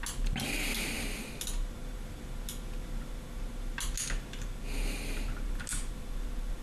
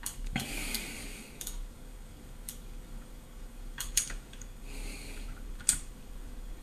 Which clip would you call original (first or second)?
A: first